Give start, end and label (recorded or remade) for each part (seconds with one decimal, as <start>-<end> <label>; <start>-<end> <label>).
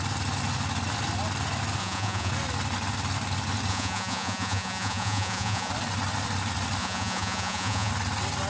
0.0-1.8 recorded; 1.8-2.3 remade; 2.3-3.7 recorded; 3.7-5.7 remade; 5.7-6.8 recorded; 6.8-7.9 remade; 7.9-8.5 recorded